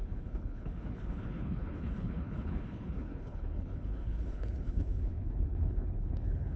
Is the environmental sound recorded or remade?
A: remade